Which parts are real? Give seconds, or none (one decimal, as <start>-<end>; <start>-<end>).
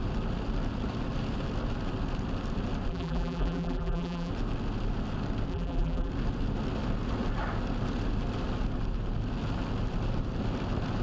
0.0-2.9; 4.3-5.5; 6.1-11.0